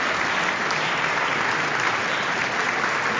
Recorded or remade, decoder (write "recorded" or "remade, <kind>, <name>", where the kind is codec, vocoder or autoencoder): recorded